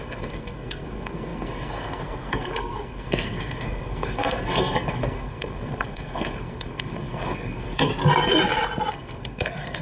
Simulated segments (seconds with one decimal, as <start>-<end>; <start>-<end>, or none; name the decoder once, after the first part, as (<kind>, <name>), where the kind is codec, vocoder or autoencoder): 0.0-7.9 (codec, SNAC); 8.9-9.8